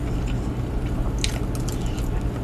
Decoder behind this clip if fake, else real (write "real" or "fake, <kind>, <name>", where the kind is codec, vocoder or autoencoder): real